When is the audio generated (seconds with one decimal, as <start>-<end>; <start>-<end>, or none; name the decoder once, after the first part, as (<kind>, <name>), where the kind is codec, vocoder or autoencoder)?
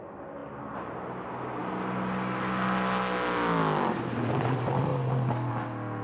none